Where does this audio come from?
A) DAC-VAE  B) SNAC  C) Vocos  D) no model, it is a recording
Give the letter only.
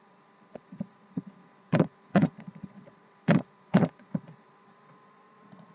C